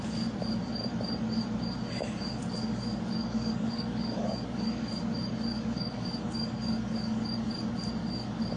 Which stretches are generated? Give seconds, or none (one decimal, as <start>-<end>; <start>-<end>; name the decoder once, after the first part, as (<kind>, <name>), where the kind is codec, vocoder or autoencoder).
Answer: 2.6-4.9 (codec, DAC); 5.5-7.5; 8.0-8.6